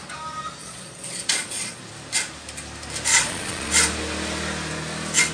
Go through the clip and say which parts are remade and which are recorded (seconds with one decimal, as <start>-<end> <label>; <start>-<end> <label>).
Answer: 0.0-0.6 recorded; 0.6-1.8 remade; 1.8-3.1 recorded; 3.1-3.7 remade; 3.7-5.3 recorded